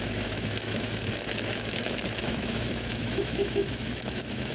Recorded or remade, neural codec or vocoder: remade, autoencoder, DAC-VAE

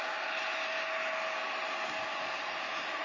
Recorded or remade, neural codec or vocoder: recorded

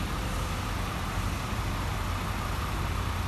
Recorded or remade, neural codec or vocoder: recorded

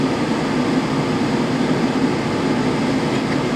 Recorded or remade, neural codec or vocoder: recorded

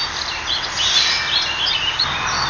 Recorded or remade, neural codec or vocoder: recorded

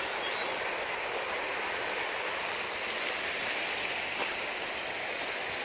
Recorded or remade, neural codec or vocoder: recorded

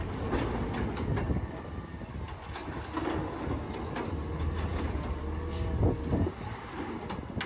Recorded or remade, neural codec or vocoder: recorded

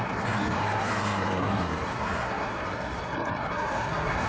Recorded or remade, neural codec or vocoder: remade, codec, SNAC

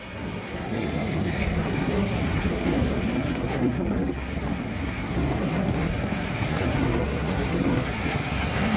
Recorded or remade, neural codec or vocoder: remade, codec, SNAC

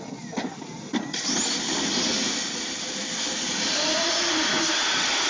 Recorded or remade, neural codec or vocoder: recorded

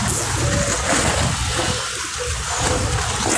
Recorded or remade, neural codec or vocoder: recorded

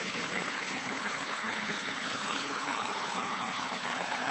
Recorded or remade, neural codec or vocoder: remade, codec, HILCodec